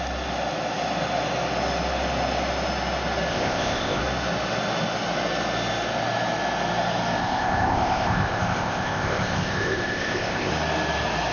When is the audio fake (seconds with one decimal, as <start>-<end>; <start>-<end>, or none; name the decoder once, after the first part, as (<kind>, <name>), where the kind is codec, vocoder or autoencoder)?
3.3-4.0 (codec, ZipCodec); 7.2-10.5